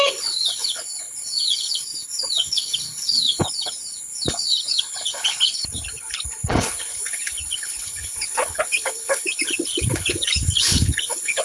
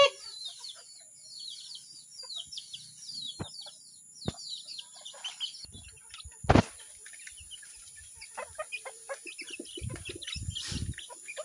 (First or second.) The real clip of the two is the second